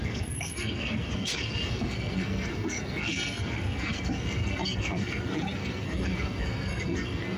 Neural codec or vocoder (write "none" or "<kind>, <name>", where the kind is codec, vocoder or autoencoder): codec, SNAC